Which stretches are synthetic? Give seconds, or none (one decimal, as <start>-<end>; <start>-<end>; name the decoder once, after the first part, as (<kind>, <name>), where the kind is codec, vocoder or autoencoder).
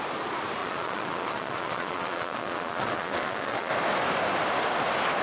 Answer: 0.6-3.7 (vocoder, Vocos)